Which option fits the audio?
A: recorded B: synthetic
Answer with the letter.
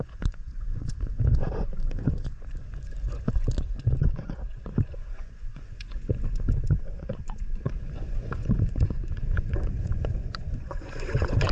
B